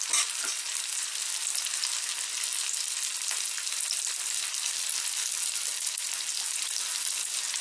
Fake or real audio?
real